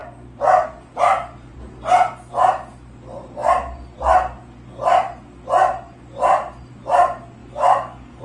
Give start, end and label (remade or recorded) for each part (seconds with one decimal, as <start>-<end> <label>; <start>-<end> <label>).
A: 0.0-7.4 recorded; 7.4-8.2 remade